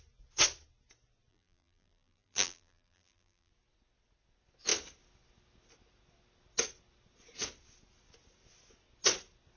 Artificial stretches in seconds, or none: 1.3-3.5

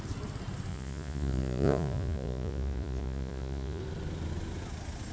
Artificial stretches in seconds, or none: 0.7-3.8

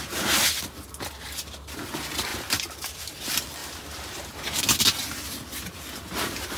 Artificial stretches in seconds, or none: 2.3-3.0; 3.6-4.6

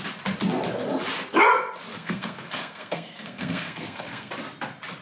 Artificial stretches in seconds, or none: 1.9-4.3

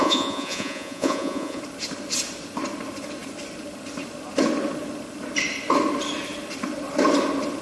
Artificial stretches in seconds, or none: 0.0-1.6

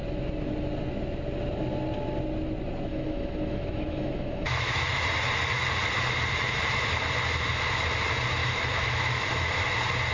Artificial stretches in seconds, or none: 2.9-5.0; 8.4-9.5